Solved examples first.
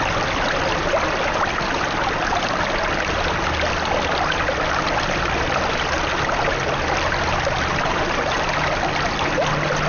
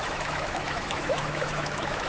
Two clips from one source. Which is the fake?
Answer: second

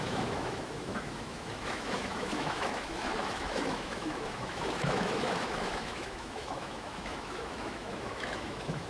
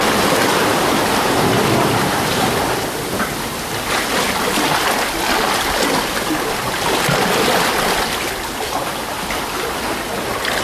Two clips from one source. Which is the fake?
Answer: first